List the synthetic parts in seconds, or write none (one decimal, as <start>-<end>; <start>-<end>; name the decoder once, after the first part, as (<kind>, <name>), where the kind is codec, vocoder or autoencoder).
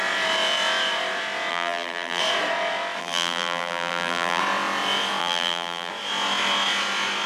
1.5-2.2 (vocoder, BigVGAN v2); 3.0-4.4; 5.2-5.9